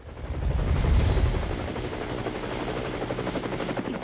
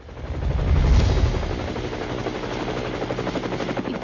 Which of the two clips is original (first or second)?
second